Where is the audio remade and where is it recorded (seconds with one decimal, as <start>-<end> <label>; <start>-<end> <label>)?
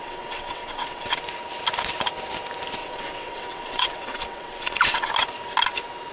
0.0-1.2 remade; 1.2-2.8 recorded; 2.8-5.1 remade; 5.1-6.1 recorded